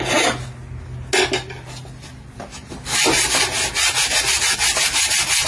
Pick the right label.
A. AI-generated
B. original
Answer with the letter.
B